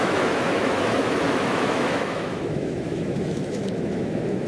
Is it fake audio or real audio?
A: fake